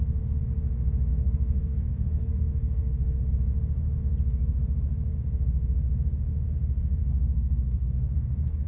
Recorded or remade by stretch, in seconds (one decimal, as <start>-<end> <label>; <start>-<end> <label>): 0.0-1.1 recorded; 1.1-3.2 remade; 3.2-7.0 recorded; 7.0-8.7 remade